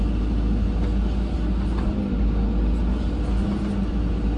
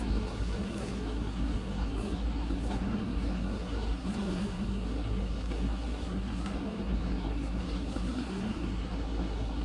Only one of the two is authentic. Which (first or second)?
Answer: first